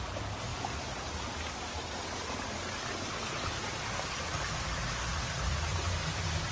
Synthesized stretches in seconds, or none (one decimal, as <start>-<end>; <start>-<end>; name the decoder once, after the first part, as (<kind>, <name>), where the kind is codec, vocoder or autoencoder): none